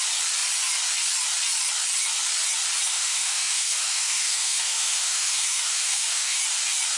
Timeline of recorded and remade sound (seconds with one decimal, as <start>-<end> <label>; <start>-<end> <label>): 0.0-2.9 recorded; 2.9-6.4 remade; 6.4-7.0 recorded